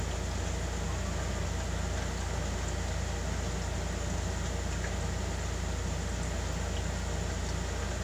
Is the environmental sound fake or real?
real